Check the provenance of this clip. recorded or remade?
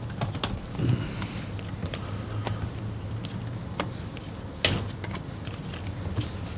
recorded